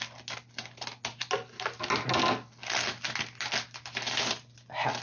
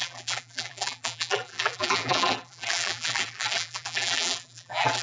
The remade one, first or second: second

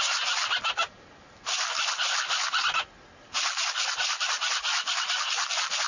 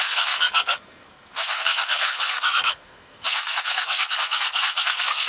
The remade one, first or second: second